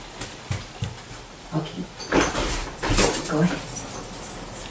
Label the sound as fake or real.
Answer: real